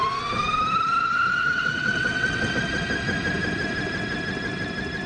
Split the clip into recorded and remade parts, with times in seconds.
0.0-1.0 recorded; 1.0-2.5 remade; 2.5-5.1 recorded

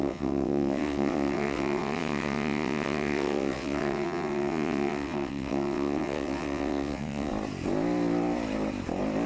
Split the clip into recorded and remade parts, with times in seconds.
0.0-7.3 remade; 7.3-9.3 recorded

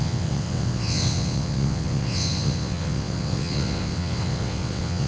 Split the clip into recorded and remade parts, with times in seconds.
0.0-5.1 remade

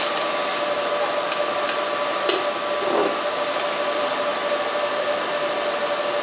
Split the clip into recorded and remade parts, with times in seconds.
0.0-6.2 recorded